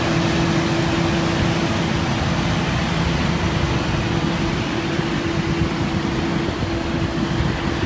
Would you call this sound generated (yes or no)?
no